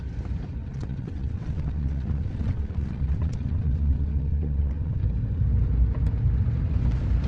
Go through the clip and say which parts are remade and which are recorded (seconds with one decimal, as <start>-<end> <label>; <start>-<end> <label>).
0.0-0.6 recorded; 0.6-5.0 remade; 5.0-7.3 recorded